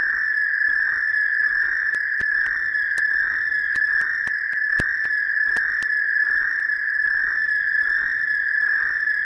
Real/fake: real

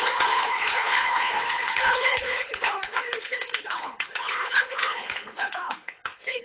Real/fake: fake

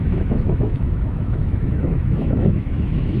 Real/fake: fake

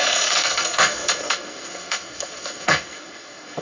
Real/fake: fake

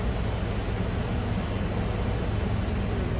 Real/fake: real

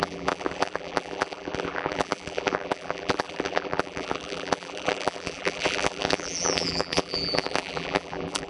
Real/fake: fake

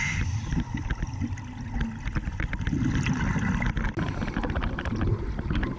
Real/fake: real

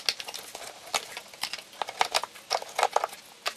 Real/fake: real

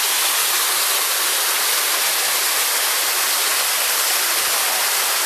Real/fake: real